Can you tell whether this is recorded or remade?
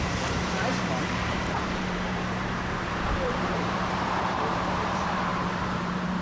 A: remade